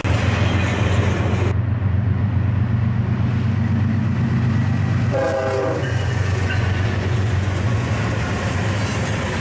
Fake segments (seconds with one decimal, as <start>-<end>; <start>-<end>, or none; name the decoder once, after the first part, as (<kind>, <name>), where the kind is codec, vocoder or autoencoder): 1.8-2.4 (vocoder, Vocos); 5.8-7.9